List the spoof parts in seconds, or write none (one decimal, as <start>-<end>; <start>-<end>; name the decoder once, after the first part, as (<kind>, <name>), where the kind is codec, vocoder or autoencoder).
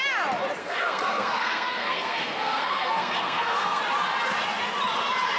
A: 0.6-3.8 (codec, SNAC)